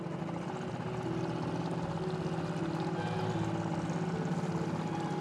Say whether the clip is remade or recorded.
recorded